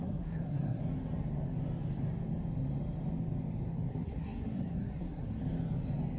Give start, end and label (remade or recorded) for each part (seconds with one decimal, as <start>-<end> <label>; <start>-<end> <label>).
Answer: 0.0-0.8 remade; 0.8-3.9 recorded; 3.9-5.4 remade; 5.4-6.2 recorded